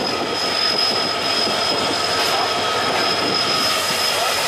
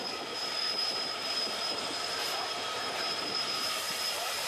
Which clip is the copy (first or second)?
second